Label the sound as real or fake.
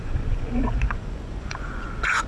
fake